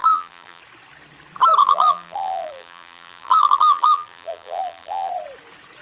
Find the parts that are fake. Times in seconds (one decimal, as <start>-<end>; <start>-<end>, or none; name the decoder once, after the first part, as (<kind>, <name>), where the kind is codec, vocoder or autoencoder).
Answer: 0.0-0.6 (vocoder, BigVGAN v2); 1.6-5.1